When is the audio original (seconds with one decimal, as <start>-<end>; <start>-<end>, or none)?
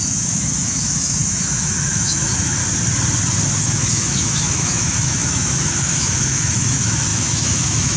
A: 2.6-3.6